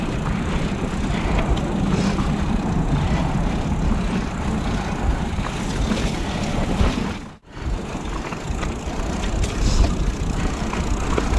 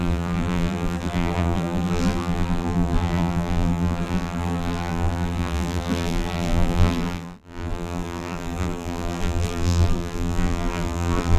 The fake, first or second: second